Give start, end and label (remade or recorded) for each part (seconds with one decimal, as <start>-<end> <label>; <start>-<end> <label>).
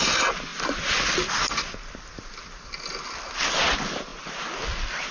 0.0-5.1 recorded